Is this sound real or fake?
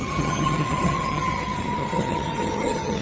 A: fake